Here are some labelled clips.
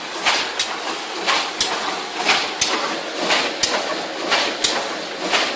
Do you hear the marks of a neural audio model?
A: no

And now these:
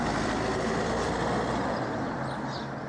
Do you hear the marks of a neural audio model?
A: no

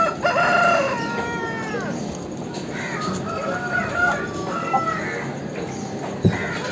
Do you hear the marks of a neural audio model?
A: no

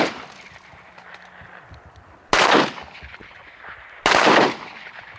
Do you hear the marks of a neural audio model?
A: no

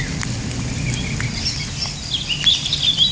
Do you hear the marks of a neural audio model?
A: no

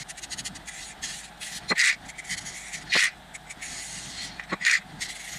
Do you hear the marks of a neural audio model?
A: no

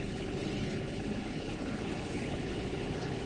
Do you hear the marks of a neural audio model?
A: yes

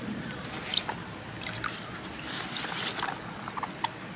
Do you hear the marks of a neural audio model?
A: no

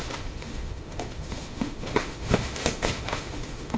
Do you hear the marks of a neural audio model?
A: yes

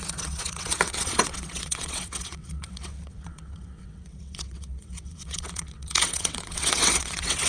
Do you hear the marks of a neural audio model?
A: yes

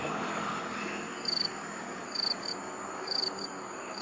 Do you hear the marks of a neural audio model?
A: yes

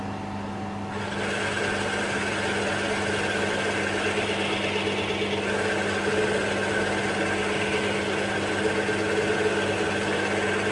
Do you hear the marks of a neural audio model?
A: no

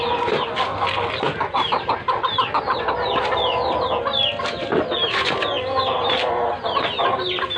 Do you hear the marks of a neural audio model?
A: no